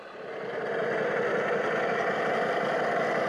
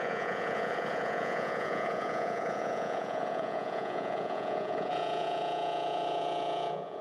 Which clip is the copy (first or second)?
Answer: second